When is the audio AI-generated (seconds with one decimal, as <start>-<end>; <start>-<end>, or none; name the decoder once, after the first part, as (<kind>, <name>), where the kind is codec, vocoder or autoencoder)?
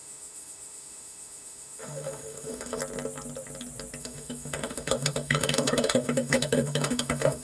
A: 0.0-2.8 (autoencoder, DAC-VAE); 4.0-7.4